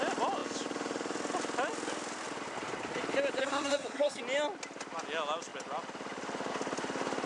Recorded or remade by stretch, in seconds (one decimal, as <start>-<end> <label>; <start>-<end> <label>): 0.0-3.4 recorded; 3.4-4.2 remade; 4.2-7.3 recorded